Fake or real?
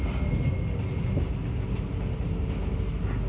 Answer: real